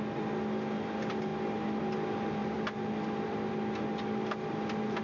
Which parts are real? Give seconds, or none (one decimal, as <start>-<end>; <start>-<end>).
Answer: 0.0-5.0